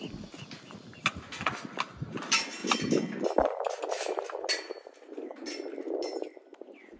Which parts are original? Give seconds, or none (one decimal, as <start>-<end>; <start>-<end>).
0.0-7.0